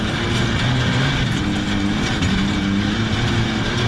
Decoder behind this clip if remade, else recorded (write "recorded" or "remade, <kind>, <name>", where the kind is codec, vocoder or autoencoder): recorded